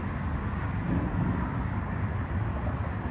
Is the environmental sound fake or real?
real